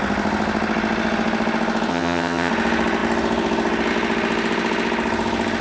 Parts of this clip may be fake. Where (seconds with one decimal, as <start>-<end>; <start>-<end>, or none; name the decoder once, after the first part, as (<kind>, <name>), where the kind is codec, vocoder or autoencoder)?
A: 1.9-2.5 (vocoder, HiFi-GAN)